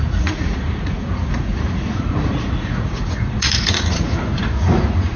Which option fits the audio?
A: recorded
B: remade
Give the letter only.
B